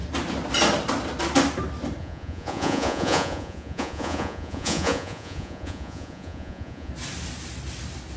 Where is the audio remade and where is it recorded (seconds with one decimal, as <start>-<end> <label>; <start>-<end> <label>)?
0.0-2.0 recorded; 2.0-6.9 remade; 6.9-8.2 recorded